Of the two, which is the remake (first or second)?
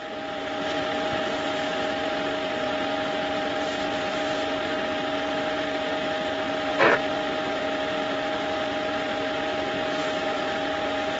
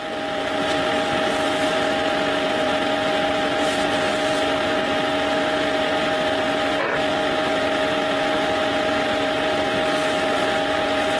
first